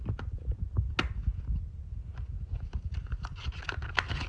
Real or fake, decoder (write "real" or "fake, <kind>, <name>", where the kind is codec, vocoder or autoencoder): real